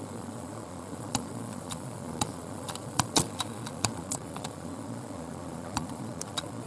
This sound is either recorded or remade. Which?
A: remade